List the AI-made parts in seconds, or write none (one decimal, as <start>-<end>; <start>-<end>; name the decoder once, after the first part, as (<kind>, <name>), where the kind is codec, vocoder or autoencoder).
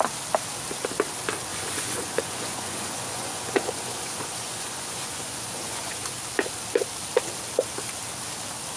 1.5-6.2 (vocoder, Vocos)